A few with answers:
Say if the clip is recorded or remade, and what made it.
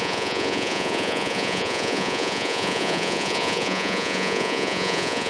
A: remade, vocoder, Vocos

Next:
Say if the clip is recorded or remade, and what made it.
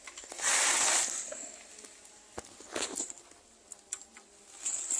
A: recorded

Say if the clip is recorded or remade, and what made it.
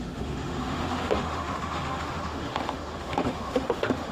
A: remade, autoencoder, DAC-VAE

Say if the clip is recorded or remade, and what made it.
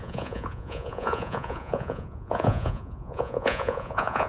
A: remade, vocoder, Vocos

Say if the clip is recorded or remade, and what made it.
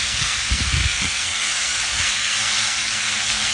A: remade, codec, SNAC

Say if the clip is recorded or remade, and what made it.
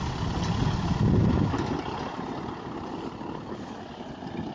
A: recorded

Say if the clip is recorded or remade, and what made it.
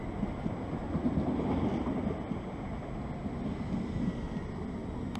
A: recorded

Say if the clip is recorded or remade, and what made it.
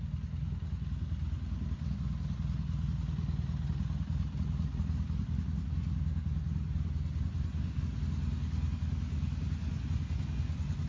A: recorded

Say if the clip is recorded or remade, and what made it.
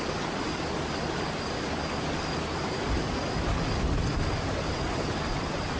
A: recorded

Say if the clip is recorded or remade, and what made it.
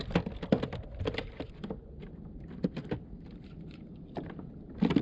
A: recorded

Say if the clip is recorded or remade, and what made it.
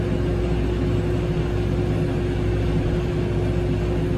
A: recorded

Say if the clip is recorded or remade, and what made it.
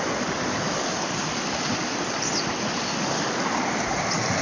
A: recorded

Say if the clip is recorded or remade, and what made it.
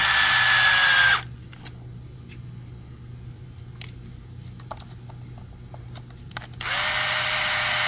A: recorded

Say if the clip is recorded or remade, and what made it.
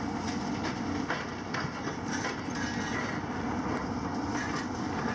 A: recorded